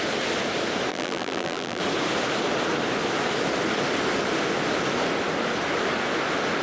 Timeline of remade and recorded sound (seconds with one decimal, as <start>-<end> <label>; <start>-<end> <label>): 0.0-0.9 recorded; 0.9-1.8 remade; 1.8-6.6 recorded